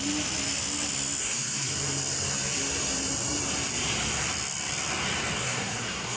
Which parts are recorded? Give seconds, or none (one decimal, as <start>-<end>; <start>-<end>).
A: 0.0-1.2; 1.7-5.4